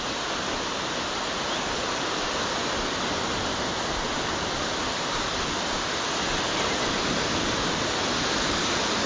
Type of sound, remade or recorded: recorded